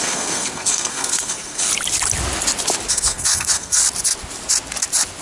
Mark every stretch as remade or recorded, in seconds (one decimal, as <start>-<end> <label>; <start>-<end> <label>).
0.0-1.7 remade; 1.7-2.9 recorded; 2.9-3.8 remade; 3.8-5.2 recorded